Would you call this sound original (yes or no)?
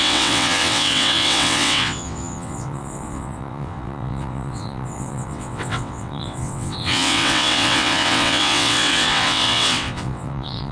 no